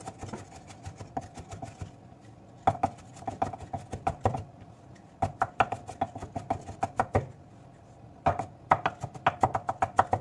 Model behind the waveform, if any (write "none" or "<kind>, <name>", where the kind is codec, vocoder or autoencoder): none